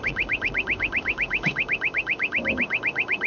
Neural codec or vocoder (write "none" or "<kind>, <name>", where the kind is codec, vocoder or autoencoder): autoencoder, DAC-VAE